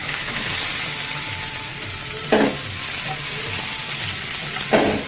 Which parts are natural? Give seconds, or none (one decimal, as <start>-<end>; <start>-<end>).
0.5-5.1